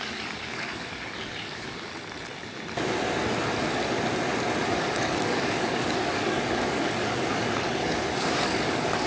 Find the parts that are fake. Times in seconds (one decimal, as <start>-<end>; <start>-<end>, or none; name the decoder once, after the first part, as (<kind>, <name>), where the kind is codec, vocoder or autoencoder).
0.0-1.9 (codec, DAC); 4.8-9.1